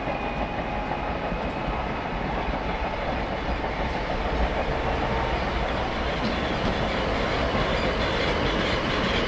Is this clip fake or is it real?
real